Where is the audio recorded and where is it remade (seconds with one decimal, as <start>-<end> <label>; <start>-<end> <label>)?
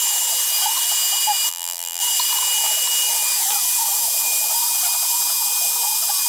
0.0-1.5 recorded; 1.5-2.0 remade; 2.0-6.3 recorded